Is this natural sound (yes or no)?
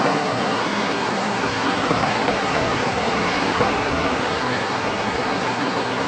no